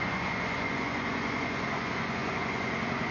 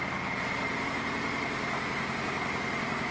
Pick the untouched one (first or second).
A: second